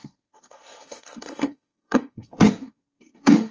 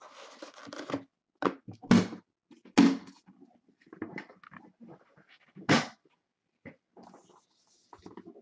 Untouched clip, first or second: second